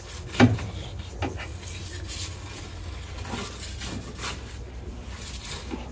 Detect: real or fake real